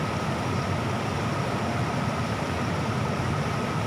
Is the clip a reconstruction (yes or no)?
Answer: no